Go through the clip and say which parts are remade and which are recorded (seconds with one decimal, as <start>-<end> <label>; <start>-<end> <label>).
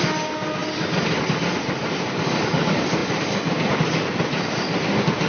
0.0-0.6 recorded; 0.6-2.2 remade; 2.2-3.0 recorded; 3.0-3.7 remade; 3.7-5.3 recorded